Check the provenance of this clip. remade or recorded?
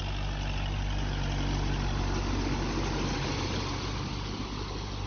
recorded